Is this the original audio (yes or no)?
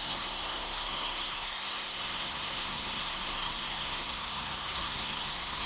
no